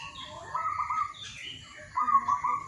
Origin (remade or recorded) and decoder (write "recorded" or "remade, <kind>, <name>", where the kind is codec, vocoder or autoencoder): recorded